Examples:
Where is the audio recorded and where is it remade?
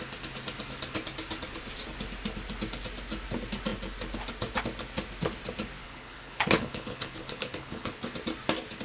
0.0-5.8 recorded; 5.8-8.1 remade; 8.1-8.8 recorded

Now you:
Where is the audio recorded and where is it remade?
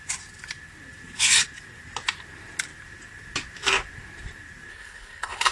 0.0-4.7 recorded; 4.7-5.5 remade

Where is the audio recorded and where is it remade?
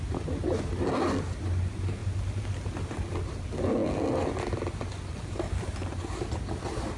0.0-7.0 recorded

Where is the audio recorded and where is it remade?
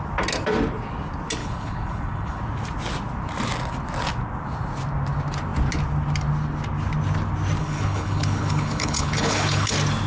0.0-1.4 recorded; 1.4-2.4 remade; 2.4-7.6 recorded; 7.6-9.7 remade; 9.7-10.1 recorded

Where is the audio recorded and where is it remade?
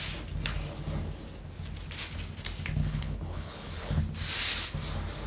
0.0-2.8 recorded; 2.8-4.0 remade; 4.0-5.3 recorded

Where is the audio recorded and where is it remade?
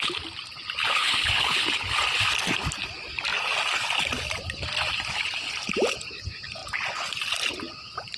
0.0-0.8 recorded; 0.8-2.0 remade; 2.0-8.2 recorded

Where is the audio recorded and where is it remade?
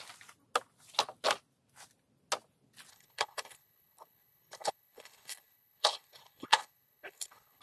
0.0-2.9 recorded; 2.9-7.6 remade